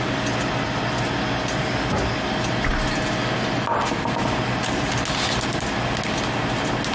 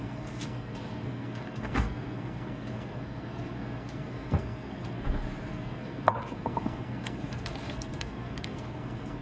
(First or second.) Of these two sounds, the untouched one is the first